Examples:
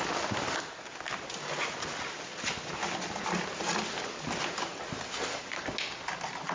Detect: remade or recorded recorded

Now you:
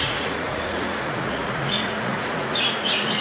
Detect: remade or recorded remade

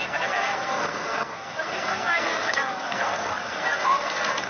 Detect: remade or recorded remade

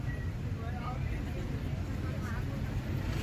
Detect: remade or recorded recorded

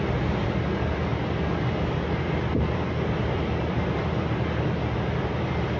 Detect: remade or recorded remade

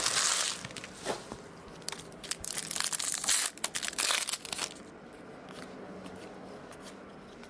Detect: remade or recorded recorded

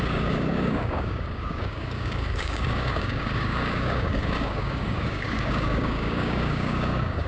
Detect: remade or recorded remade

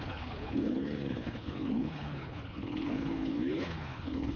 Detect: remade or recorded remade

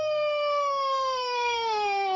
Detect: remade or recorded remade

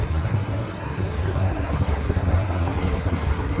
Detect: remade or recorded remade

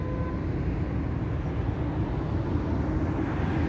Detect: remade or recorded recorded